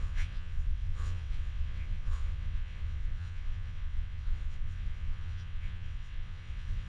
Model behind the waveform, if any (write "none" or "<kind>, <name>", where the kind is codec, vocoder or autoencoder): vocoder, WaveNeXt